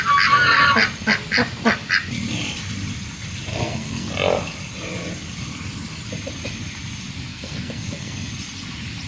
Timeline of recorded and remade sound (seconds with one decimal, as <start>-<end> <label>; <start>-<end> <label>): 0.0-3.5 recorded; 3.5-4.1 remade; 4.1-7.3 recorded; 7.3-8.3 remade; 8.3-9.1 recorded